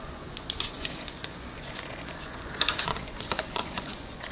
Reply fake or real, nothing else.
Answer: fake